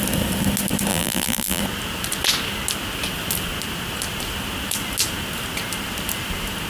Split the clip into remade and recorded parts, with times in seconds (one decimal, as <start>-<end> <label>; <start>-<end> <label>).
0.0-0.9 recorded; 0.9-1.6 remade; 1.6-6.7 recorded